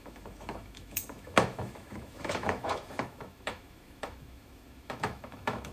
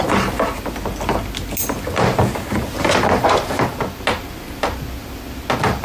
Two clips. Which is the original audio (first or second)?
second